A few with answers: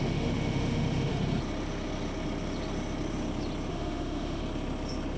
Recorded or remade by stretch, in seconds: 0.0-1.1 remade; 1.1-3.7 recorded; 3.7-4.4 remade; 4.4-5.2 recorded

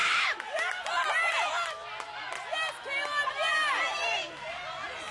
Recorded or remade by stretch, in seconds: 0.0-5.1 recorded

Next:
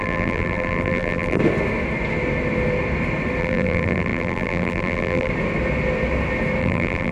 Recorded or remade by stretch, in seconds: 0.0-1.4 remade; 1.4-3.4 recorded; 3.4-5.3 remade; 5.3-6.6 recorded; 6.6-7.1 remade

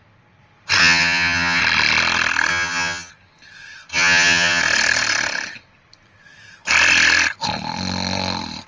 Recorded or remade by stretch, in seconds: 0.0-0.8 recorded; 0.8-1.6 remade; 1.6-2.5 recorded; 2.5-3.1 remade; 3.1-3.9 recorded; 3.9-4.6 remade; 4.6-8.7 recorded

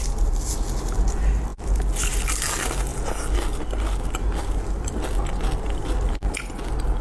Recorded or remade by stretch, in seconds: 0.0-7.0 recorded

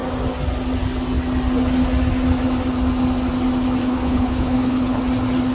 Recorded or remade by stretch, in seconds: 0.0-3.8 recorded; 3.8-5.0 remade; 5.0-5.5 recorded

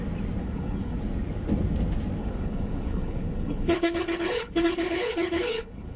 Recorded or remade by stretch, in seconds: 0.0-0.4 recorded; 0.4-1.0 remade; 1.0-2.2 recorded; 2.2-6.0 remade

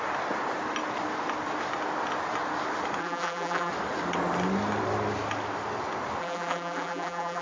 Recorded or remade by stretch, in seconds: 0.0-3.0 recorded; 3.0-3.7 remade; 3.7-6.2 recorded; 6.2-7.4 remade